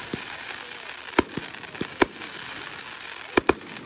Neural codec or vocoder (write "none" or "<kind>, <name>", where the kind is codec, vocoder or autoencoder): none